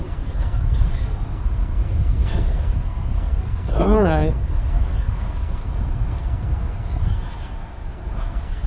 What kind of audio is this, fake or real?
fake